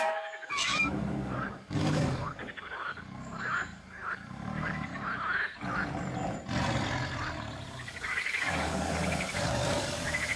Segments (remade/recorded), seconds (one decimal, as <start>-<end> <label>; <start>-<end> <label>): 0.0-4.9 remade; 4.9-7.7 recorded; 7.7-10.4 remade